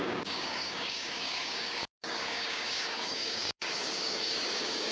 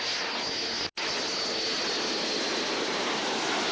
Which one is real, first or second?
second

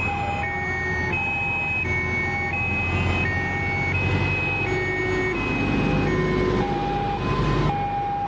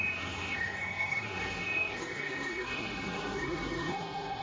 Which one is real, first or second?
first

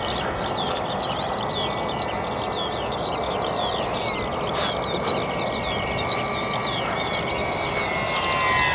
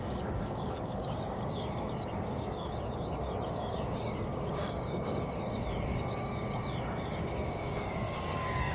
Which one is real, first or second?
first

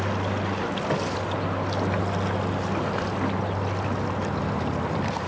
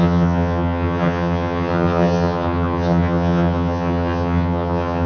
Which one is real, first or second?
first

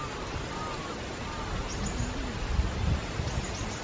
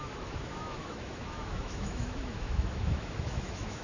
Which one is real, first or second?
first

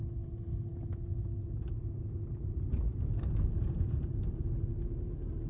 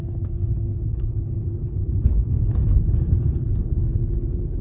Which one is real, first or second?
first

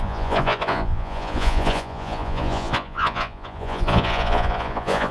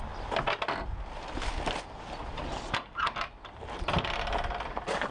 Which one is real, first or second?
second